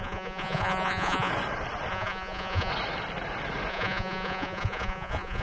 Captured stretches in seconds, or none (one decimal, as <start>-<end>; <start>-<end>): 1.3-1.9; 2.7-3.7